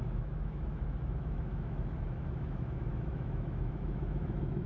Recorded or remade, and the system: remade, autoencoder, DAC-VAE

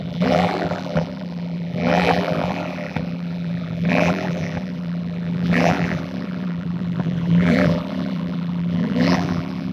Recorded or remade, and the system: remade, vocoder, BigVGAN v2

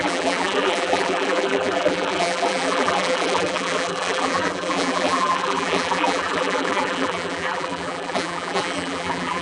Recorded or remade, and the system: remade, vocoder, BigVGAN v2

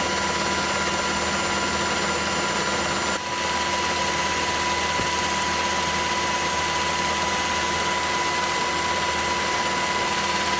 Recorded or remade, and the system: recorded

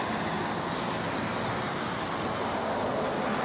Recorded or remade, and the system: recorded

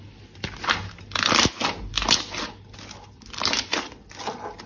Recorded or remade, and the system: recorded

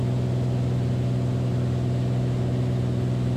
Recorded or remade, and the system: recorded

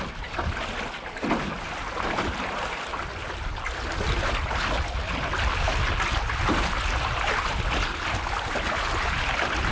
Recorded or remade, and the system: recorded